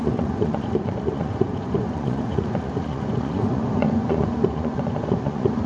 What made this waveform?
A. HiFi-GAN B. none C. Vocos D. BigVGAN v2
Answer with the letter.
C